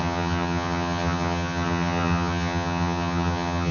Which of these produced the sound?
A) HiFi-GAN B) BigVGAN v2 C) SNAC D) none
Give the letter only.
A